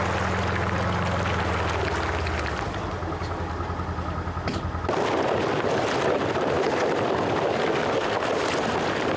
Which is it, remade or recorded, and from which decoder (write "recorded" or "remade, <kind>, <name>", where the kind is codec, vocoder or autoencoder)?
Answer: recorded